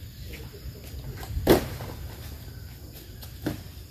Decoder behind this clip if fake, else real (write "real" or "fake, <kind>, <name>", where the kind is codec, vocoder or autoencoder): real